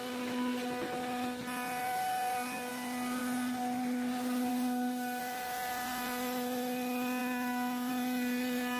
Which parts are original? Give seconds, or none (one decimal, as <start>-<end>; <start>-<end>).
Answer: 0.0-4.5; 5.2-8.8